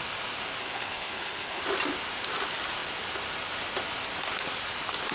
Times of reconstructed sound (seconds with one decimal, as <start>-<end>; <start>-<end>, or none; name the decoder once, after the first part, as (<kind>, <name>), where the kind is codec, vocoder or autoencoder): 0.6-1.6 (codec, HILCodec)